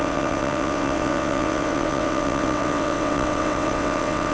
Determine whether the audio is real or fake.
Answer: fake